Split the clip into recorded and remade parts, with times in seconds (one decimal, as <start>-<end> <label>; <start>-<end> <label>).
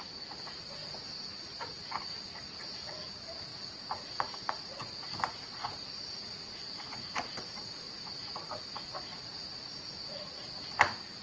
0.0-3.5 recorded; 3.5-8.5 remade; 8.5-9.1 recorded; 9.1-10.3 remade; 10.3-11.2 recorded